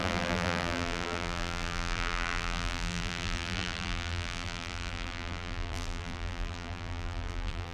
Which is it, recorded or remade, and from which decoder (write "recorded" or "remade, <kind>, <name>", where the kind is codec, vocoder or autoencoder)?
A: remade, vocoder, BigVGAN v2